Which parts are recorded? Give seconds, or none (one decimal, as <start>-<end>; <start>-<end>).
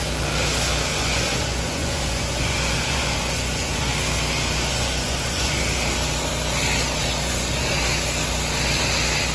0.0-0.9; 3.9-4.7; 5.6-7.0; 7.7-9.3